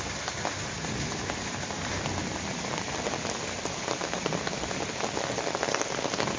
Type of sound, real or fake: real